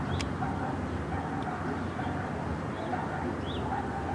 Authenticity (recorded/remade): recorded